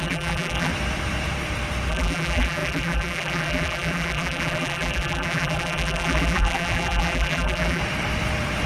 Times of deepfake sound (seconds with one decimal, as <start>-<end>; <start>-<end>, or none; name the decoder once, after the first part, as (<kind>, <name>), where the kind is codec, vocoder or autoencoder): 0.0-0.7 (vocoder, BigVGAN v2); 1.9-7.8